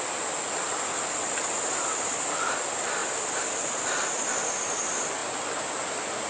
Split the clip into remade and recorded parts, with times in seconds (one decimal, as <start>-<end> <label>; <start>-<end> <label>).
0.0-6.3 recorded